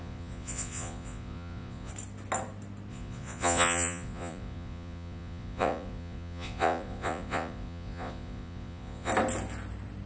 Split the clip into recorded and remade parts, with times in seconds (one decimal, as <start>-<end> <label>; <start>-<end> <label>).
0.0-1.9 remade; 1.9-2.9 recorded; 2.9-9.1 remade; 9.1-10.1 recorded